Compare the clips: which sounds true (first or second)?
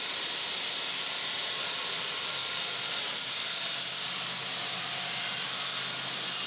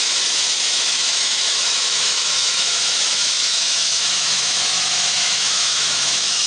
first